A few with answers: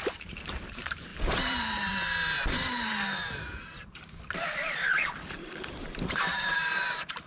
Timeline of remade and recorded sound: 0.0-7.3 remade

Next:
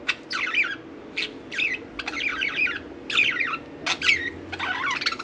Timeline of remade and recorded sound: 0.0-5.2 recorded

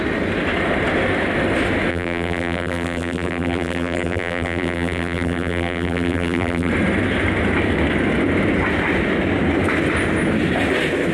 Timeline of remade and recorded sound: 0.0-1.9 recorded; 1.9-6.7 remade; 6.7-11.1 recorded

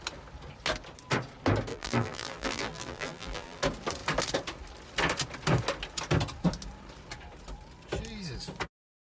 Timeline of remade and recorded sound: 0.0-1.7 recorded; 1.7-3.6 remade; 3.6-9.0 recorded

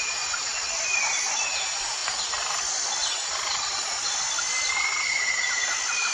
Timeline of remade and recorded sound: 0.0-6.1 recorded

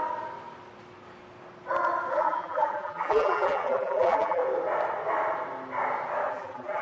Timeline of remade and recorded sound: 0.0-2.1 recorded; 2.1-4.4 remade; 4.4-6.3 recorded; 6.3-6.8 remade

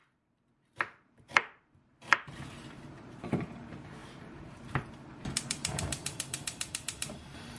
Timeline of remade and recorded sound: 0.0-7.6 remade